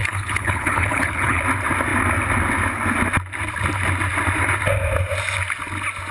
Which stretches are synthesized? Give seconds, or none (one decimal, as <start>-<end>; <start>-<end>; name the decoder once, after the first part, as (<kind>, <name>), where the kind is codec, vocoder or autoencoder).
0.0-1.4 (codec, HILCodec)